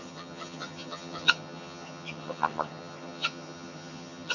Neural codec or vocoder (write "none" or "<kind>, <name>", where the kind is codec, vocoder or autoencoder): vocoder, HiFi-GAN